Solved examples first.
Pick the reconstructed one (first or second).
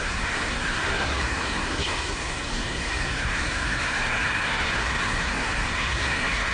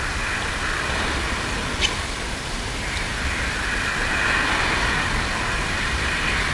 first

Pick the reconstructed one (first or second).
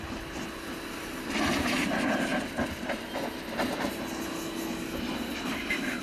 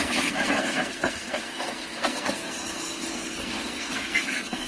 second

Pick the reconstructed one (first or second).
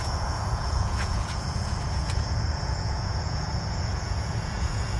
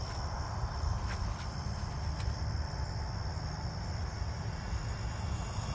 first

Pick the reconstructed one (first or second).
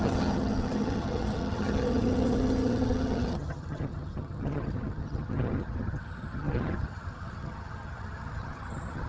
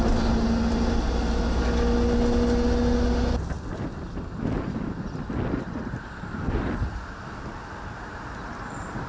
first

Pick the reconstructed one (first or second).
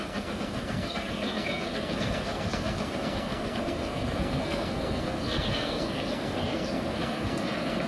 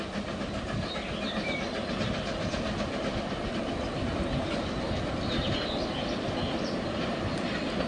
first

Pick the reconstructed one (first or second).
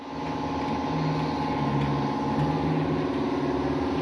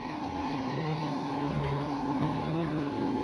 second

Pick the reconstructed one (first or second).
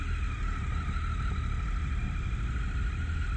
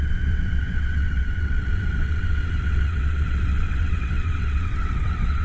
second